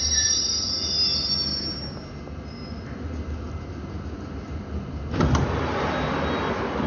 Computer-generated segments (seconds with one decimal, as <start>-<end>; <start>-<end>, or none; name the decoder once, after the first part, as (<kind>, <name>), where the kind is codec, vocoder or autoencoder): none